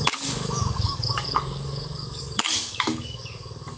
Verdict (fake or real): fake